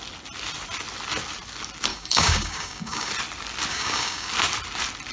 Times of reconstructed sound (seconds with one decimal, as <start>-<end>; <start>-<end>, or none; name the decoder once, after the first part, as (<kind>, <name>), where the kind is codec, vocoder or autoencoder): 1.9-3.1 (codec, DAC); 3.7-4.3